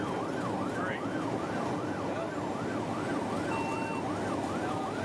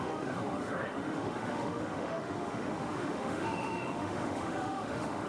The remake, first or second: second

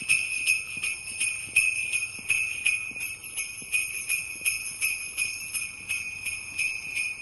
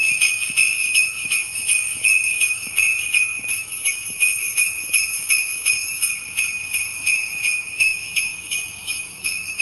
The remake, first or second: second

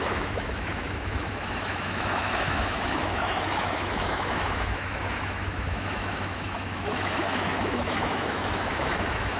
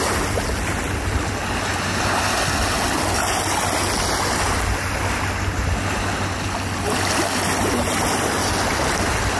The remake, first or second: first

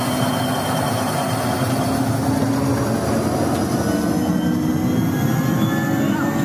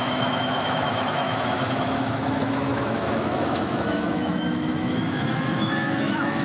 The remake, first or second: second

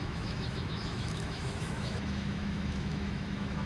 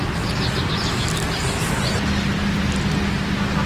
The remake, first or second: first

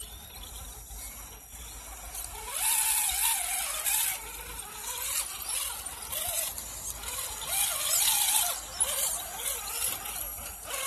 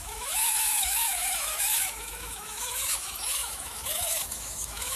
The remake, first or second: second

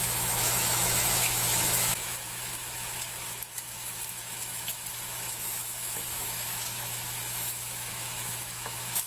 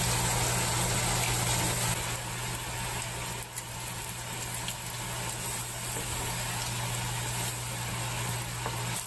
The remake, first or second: first